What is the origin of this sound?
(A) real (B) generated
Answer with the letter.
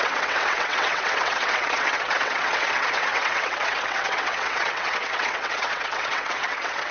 B